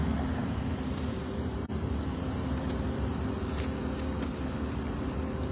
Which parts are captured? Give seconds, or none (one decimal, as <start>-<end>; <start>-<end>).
0.0-0.4; 3.2-5.5